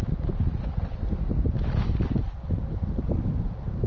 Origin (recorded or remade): recorded